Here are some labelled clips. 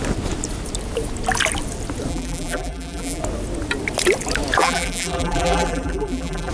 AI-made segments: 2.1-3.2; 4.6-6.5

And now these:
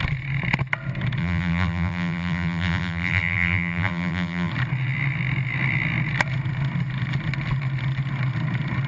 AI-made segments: 1.2-4.5

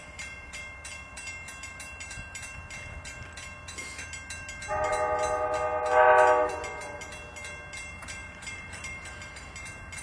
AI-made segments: 8.2-9.5

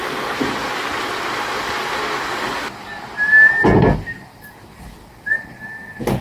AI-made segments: none

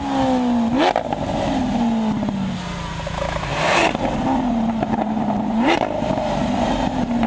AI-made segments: 3.5-7.3

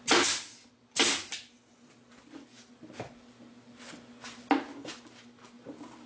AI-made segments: none

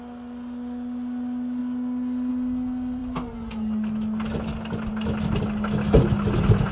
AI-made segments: none